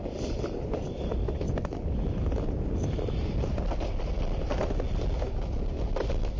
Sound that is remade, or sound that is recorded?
recorded